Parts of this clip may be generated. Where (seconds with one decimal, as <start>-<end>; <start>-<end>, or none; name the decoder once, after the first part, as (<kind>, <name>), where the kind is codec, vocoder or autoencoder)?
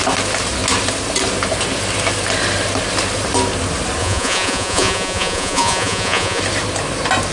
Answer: 4.0-6.4 (vocoder, Vocos)